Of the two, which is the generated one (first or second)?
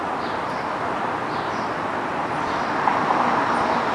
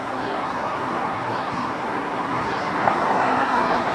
second